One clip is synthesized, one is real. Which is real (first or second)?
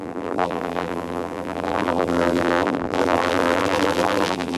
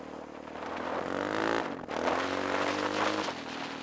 second